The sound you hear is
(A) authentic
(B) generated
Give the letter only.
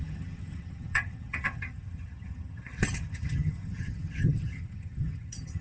B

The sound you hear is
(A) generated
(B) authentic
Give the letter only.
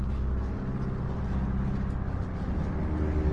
B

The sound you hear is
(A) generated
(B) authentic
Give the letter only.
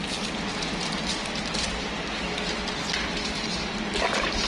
B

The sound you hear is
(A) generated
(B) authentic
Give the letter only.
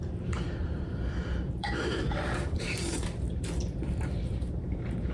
A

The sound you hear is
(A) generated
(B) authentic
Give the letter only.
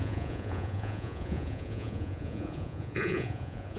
A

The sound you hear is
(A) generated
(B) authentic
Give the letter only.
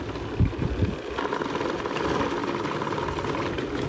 B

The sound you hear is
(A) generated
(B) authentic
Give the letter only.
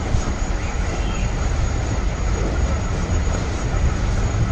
B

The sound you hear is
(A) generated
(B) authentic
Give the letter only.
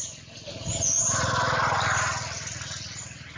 B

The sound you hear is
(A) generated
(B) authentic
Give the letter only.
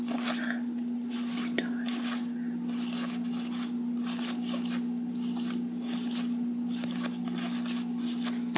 B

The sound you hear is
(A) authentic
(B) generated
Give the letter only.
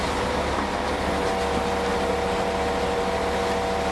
A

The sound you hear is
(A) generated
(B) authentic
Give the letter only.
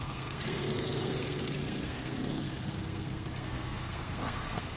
A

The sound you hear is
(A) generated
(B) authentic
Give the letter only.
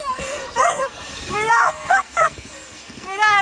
A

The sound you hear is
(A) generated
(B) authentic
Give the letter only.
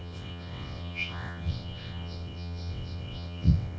A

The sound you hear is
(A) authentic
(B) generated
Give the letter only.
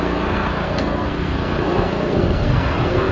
B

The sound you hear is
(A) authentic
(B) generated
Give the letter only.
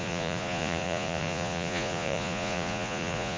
B